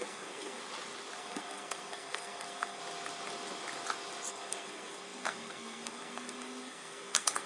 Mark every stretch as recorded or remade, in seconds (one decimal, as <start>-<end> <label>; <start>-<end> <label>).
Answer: 0.0-0.6 remade; 0.6-1.2 recorded; 1.2-2.8 remade; 2.8-4.3 recorded; 4.3-7.5 remade